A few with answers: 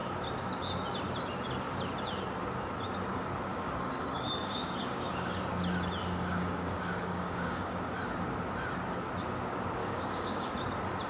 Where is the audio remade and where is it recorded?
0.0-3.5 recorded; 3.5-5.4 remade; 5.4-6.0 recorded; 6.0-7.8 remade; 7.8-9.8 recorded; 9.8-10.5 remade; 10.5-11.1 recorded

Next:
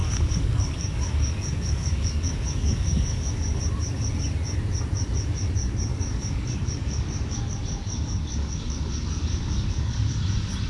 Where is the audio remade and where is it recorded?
0.0-3.6 remade; 3.6-5.9 recorded; 5.9-10.1 remade; 10.1-10.7 recorded

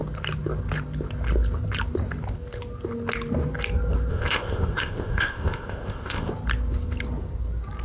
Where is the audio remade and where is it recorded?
0.0-4.1 recorded; 4.1-6.3 remade; 6.3-7.8 recorded

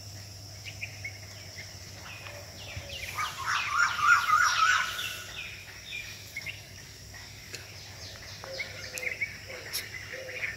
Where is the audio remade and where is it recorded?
0.0-5.6 recorded; 5.6-7.7 remade; 7.7-10.6 recorded